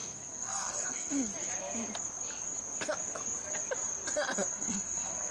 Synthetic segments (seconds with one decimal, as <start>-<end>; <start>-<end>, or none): 0.0-1.3; 4.5-5.3